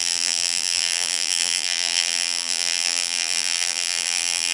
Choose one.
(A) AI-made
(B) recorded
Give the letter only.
A